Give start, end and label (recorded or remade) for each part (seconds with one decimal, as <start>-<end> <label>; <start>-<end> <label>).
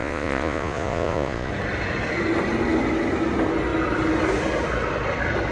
0.0-1.5 remade; 1.5-5.5 recorded